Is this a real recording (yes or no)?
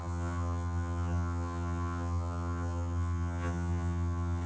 no